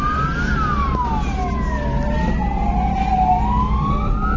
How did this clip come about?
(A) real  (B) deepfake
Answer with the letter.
A